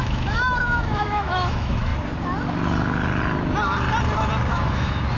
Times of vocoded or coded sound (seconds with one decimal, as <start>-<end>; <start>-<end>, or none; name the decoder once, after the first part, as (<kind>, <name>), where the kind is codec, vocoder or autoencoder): 0.0-1.9 (autoencoder, DAC-VAE); 4.5-5.2